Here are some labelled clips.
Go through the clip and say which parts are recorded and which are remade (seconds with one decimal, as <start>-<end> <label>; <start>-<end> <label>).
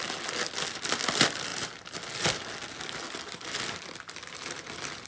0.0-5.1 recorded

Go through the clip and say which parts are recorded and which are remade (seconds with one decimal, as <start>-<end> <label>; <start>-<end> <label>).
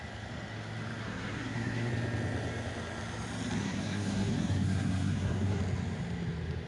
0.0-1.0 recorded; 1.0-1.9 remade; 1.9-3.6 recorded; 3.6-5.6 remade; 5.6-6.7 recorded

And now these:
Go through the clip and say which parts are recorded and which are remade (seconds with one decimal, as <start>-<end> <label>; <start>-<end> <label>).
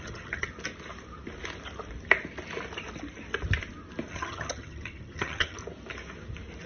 0.0-0.5 remade; 0.5-4.1 recorded; 4.1-5.6 remade; 5.6-6.7 recorded